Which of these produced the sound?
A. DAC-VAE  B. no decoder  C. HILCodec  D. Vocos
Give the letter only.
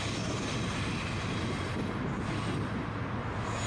B